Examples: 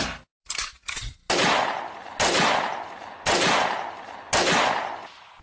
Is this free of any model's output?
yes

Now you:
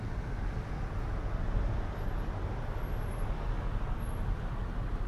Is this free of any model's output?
yes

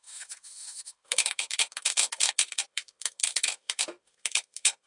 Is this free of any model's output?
no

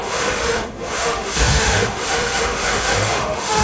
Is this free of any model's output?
no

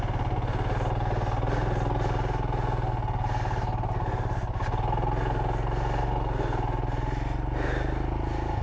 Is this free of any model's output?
yes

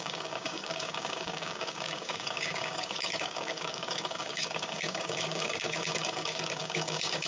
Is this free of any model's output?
no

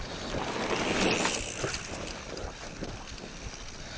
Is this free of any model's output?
yes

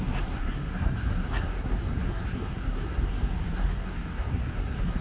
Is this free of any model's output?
no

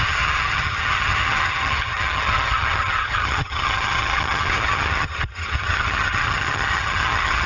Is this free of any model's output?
no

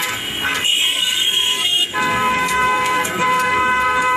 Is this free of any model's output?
no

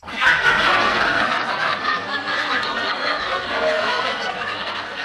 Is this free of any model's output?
no